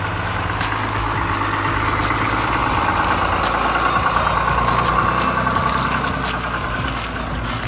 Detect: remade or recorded recorded